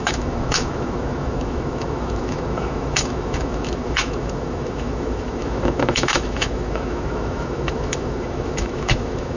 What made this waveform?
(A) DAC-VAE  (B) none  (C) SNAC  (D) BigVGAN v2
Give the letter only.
A